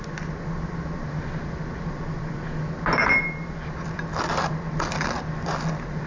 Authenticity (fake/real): real